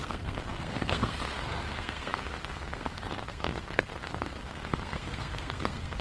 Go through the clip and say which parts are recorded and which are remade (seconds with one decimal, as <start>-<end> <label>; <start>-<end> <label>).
0.0-6.0 remade

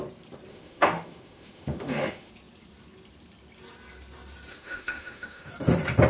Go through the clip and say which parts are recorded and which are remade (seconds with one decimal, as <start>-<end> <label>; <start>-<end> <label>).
0.0-0.5 recorded; 0.5-2.3 remade; 2.3-4.5 recorded; 4.5-5.5 remade; 5.5-6.1 recorded

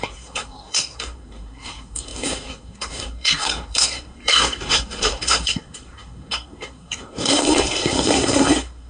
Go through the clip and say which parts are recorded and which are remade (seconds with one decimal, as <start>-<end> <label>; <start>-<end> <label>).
0.0-8.9 remade

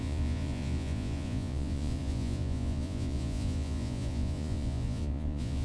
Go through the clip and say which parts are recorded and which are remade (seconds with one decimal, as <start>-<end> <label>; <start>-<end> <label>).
0.0-5.6 remade